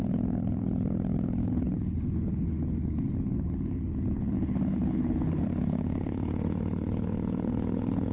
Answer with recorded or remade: remade